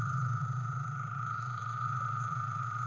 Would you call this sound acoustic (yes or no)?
no